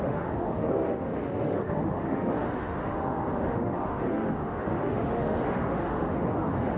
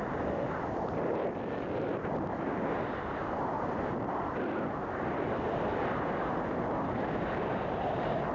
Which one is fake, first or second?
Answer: first